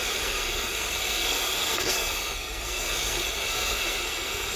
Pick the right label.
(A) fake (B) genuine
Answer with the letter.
A